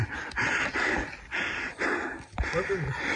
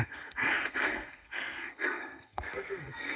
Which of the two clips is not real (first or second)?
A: second